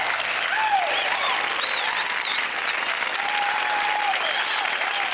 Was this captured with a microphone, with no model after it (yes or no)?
yes